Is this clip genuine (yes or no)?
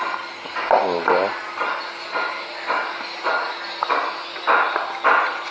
yes